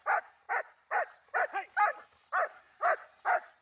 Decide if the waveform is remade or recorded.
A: recorded